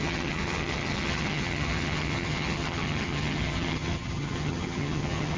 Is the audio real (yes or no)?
no